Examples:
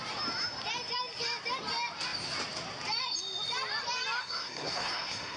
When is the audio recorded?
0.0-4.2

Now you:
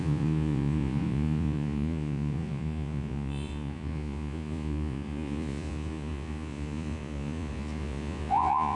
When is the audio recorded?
none

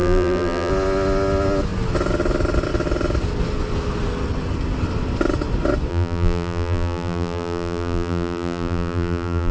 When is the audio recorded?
0.7-5.9

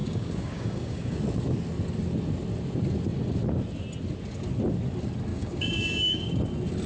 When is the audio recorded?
1.2-5.3; 6.3-6.9

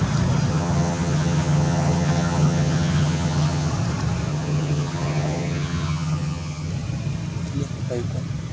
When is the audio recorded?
0.0-0.5; 3.7-4.3; 6.7-8.5

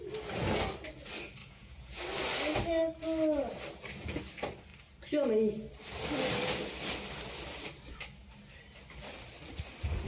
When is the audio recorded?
0.0-1.4; 2.0-10.1

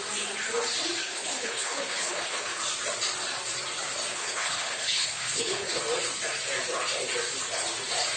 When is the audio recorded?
0.0-1.0; 2.6-4.1; 5.8-8.2